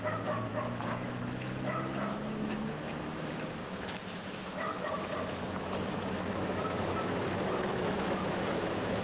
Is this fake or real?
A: fake